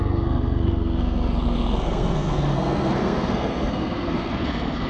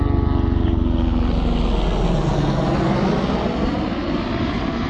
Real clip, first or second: second